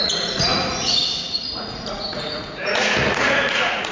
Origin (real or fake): fake